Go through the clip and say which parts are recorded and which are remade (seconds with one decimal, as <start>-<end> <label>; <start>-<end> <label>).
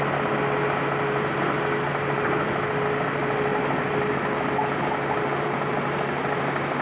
0.0-6.8 recorded